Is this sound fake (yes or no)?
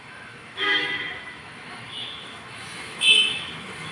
yes